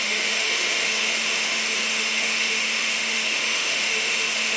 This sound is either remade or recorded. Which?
remade